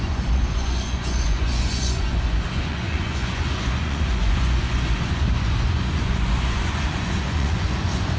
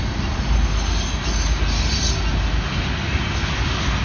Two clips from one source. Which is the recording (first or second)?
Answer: second